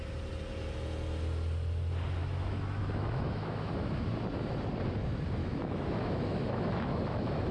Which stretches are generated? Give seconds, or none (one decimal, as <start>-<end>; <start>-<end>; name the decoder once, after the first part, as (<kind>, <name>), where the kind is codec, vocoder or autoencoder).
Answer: 2.2-3.7 (autoencoder, DAC-VAE); 5.4-7.5